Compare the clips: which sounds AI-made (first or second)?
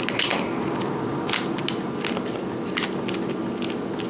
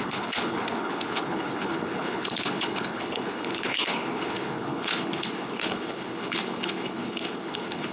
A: second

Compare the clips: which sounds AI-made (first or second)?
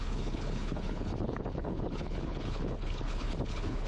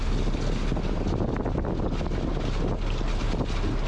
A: first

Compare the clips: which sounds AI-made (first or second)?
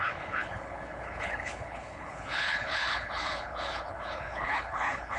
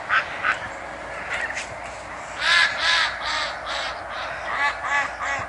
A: first